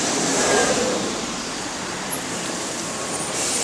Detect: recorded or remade remade